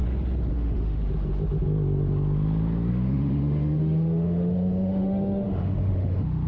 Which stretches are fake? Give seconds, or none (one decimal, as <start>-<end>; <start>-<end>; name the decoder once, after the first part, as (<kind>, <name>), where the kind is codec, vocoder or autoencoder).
0.5-1.0 (autoencoder, DAC-VAE); 2.9-6.5